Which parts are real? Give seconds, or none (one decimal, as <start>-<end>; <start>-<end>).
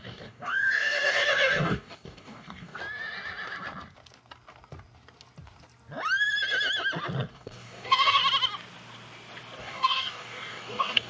2.8-7.3; 8.2-9.6